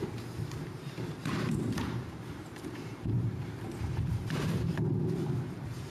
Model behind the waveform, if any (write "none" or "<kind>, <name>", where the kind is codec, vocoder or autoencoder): vocoder, BigVGAN v2